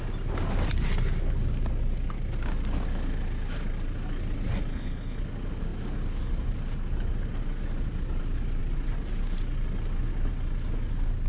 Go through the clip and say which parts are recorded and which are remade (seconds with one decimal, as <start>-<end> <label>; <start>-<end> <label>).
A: 0.0-4.7 recorded; 4.7-5.2 remade; 5.2-11.3 recorded